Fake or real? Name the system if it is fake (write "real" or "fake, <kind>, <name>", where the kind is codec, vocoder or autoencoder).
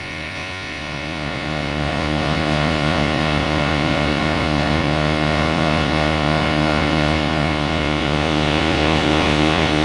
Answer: fake, vocoder, Vocos